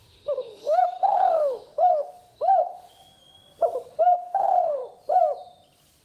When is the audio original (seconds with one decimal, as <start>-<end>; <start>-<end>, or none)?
3.0-4.0; 4.8-6.0